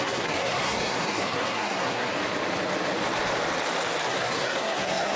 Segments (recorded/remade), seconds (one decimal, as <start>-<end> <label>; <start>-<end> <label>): 0.0-2.1 remade; 2.1-4.1 recorded; 4.1-5.2 remade